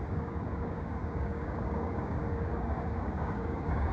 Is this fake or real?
fake